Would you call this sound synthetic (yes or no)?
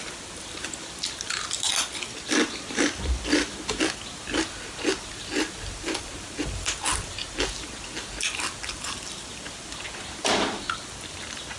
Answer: no